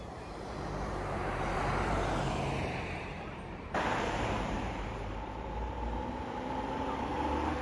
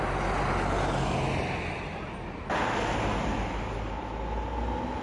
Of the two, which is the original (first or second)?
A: second